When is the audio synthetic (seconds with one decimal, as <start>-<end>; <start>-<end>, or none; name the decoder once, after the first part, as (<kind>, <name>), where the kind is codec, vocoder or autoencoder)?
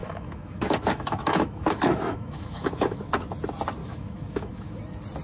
0.0-3.1 (autoencoder, DAC-VAE); 3.8-4.8